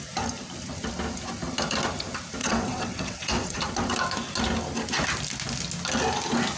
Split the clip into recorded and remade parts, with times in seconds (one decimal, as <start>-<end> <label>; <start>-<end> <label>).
0.0-2.4 recorded; 2.4-3.6 remade; 3.6-6.6 recorded